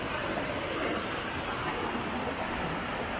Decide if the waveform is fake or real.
real